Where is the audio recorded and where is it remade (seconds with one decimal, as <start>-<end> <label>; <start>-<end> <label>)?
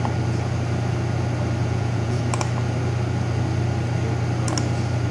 0.0-1.6 recorded; 1.6-2.2 remade; 2.2-5.1 recorded